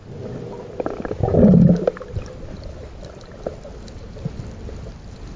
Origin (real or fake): real